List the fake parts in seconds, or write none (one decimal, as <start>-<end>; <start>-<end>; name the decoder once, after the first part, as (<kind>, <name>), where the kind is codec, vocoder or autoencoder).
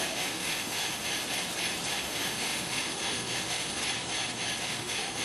0.0-1.0 (autoencoder, DAC-VAE); 1.9-3.8; 4.6-5.2